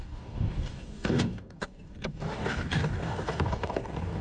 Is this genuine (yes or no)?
no